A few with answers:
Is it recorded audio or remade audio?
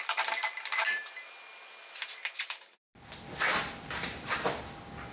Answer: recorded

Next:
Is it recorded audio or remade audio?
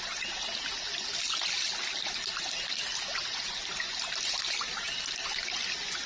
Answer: recorded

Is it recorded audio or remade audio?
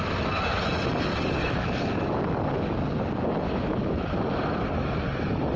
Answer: recorded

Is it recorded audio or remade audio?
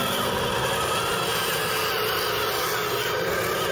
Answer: recorded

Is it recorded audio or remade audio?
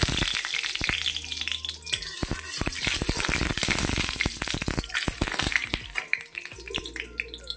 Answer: recorded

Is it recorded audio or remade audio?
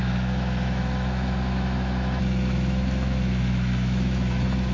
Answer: remade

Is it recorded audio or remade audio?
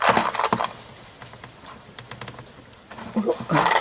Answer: recorded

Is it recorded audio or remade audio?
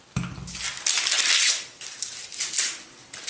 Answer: recorded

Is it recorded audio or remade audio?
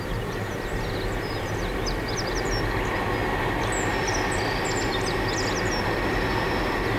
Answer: recorded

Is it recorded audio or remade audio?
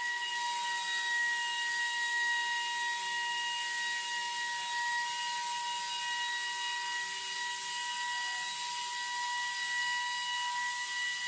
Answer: recorded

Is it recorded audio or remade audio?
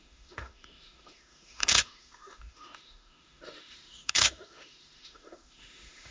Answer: remade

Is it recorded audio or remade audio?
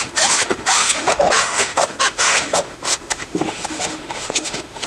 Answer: remade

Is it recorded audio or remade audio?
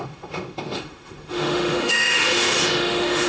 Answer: remade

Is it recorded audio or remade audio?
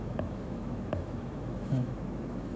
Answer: remade